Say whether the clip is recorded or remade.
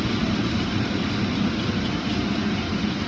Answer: recorded